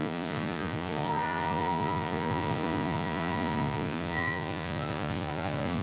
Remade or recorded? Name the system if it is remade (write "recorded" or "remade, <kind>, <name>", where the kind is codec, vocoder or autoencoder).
remade, vocoder, Vocos